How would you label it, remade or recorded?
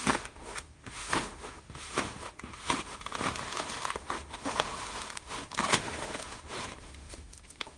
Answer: remade